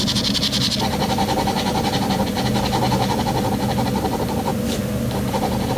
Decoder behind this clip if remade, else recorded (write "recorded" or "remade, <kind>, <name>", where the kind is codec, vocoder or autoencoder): recorded